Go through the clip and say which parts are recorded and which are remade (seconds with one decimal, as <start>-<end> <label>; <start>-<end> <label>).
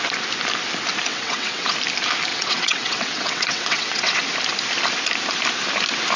0.0-1.1 recorded; 1.1-1.7 remade; 1.7-2.3 recorded; 2.3-4.2 remade; 4.2-6.2 recorded